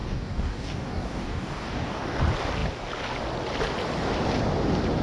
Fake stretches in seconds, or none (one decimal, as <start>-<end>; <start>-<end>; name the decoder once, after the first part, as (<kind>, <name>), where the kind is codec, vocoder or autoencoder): 0.0-2.2 (codec, DAC)